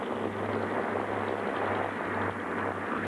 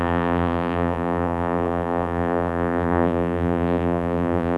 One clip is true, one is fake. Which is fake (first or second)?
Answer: second